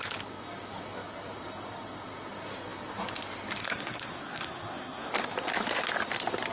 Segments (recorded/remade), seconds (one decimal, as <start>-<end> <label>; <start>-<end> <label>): 0.0-3.6 recorded; 3.6-5.1 remade; 5.1-6.5 recorded